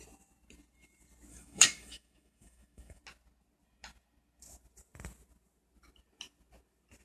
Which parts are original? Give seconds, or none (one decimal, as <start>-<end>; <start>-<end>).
0.0-1.3; 3.0-7.0